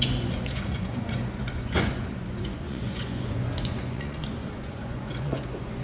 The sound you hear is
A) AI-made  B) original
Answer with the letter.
A